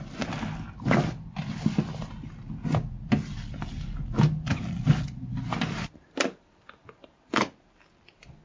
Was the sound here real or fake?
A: real